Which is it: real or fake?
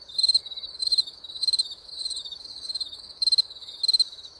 fake